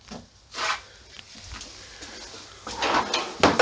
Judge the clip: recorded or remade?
recorded